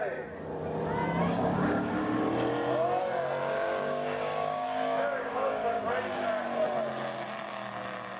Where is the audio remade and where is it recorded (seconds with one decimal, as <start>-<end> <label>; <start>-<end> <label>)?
0.0-1.2 recorded; 1.2-2.2 remade; 2.2-3.4 recorded; 3.4-5.8 remade; 5.8-8.2 recorded